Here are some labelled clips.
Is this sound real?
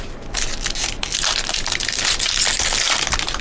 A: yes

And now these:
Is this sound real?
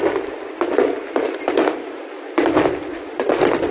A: yes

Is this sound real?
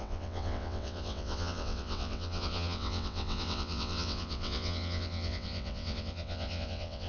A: no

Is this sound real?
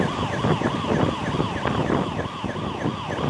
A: yes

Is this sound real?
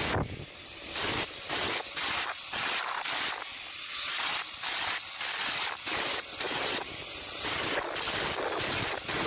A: yes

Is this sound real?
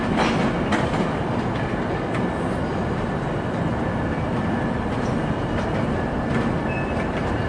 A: yes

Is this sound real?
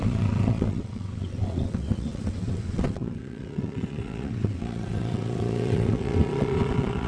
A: no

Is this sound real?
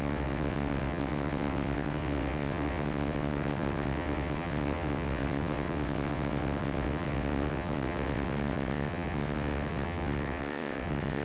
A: no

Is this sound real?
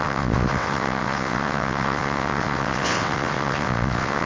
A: no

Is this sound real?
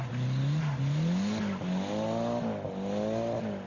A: yes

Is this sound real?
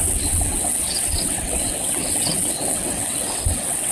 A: no